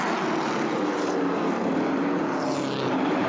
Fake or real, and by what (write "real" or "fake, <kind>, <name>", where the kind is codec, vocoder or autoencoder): real